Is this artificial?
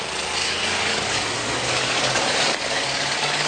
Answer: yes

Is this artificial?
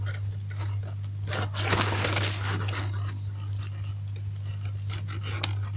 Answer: no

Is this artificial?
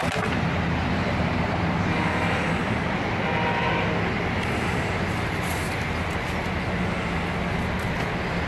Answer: no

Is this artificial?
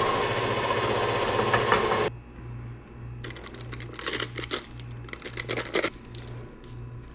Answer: no